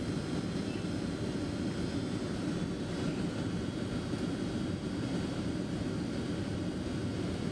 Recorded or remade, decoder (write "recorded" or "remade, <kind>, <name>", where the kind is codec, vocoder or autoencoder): recorded